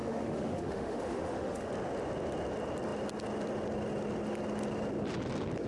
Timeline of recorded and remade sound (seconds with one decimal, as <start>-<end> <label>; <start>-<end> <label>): 0.0-1.7 remade; 1.7-5.7 recorded